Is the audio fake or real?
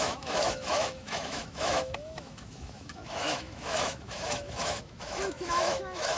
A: fake